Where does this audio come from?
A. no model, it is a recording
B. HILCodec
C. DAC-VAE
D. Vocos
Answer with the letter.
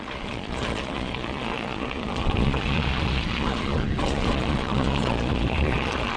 D